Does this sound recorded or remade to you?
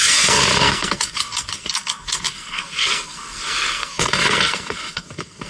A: remade